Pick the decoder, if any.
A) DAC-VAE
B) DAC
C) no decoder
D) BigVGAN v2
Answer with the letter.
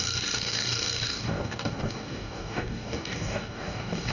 B